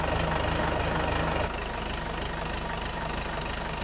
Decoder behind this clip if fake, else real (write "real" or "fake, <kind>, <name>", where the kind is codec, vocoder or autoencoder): real